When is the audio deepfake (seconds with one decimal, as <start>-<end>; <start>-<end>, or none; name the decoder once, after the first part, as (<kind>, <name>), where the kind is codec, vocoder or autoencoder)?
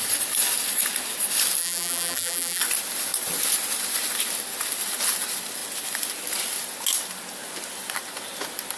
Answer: 1.6-2.6 (vocoder, BigVGAN v2)